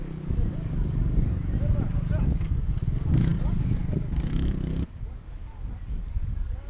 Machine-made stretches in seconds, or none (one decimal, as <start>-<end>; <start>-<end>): 0.0-1.3; 2.3-6.7